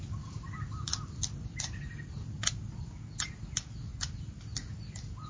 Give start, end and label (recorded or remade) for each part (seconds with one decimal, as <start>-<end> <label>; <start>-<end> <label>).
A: 0.0-5.3 recorded